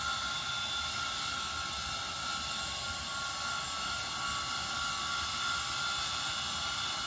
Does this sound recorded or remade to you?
recorded